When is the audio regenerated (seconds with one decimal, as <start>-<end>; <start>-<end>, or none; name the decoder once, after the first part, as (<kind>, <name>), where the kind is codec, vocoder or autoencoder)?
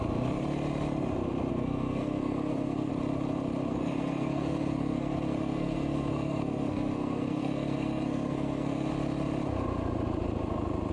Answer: 1.5-2.9 (codec, SNAC); 3.7-8.9